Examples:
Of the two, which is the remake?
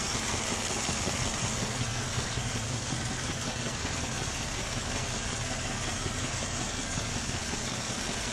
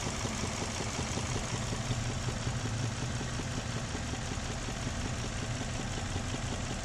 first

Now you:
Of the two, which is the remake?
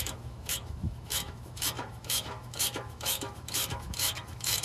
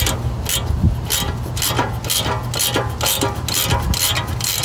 first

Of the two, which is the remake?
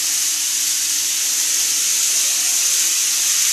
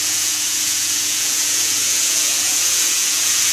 second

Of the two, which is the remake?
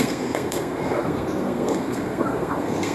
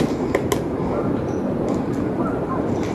first